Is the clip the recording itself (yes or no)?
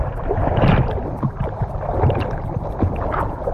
no